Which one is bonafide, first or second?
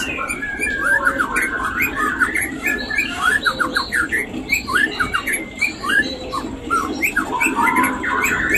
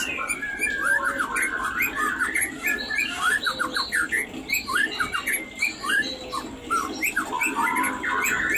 second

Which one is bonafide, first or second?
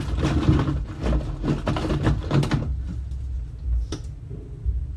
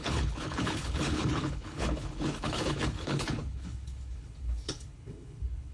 first